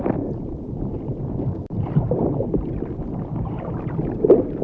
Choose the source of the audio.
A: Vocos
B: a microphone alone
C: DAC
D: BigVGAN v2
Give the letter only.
D